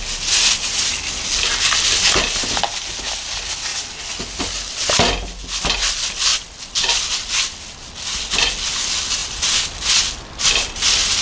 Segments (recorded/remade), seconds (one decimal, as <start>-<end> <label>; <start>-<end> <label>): 0.0-11.2 recorded